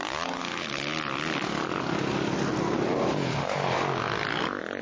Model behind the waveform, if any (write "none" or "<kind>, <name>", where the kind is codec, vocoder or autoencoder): none